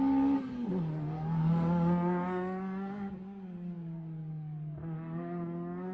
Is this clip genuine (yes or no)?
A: no